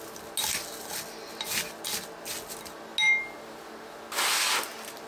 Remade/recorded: recorded